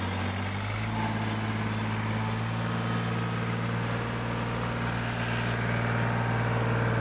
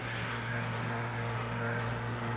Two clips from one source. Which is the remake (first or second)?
second